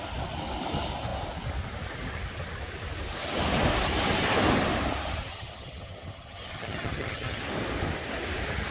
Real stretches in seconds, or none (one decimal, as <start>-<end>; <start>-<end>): 0.0-5.3; 7.4-8.7